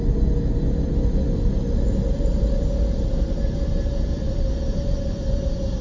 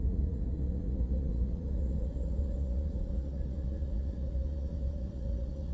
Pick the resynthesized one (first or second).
second